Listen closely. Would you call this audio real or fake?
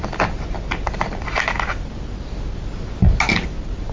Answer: real